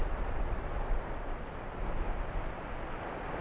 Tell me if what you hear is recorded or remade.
remade